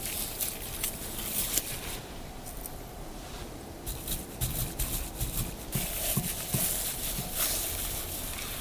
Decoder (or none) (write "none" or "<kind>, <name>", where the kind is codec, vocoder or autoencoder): none